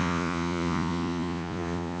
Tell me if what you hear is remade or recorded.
remade